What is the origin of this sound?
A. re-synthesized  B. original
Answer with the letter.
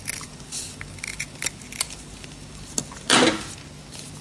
B